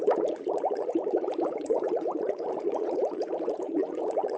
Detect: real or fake fake